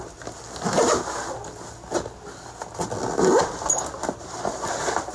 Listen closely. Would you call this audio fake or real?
real